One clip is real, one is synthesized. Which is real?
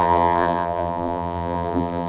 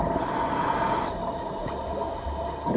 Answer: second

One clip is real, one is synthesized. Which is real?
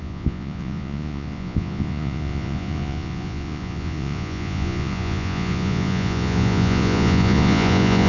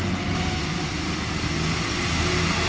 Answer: second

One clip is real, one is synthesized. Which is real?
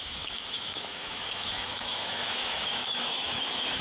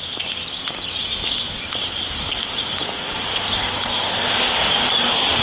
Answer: second